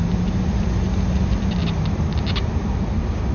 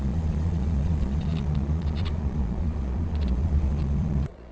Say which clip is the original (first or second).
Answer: first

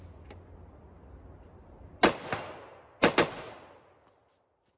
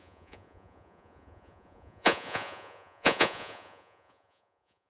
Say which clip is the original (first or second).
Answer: first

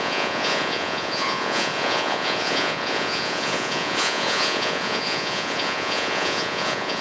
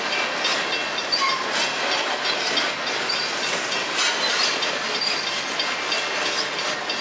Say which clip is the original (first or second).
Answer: second